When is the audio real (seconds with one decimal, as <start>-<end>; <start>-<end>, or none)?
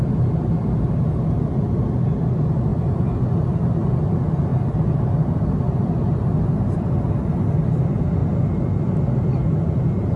0.0-2.7; 3.2-4.5; 6.0-10.2